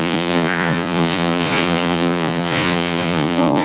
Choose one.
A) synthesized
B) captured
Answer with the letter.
A